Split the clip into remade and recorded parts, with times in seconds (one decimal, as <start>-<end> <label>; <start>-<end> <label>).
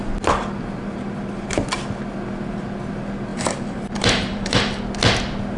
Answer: 0.0-3.3 recorded; 3.3-4.8 remade; 4.8-5.6 recorded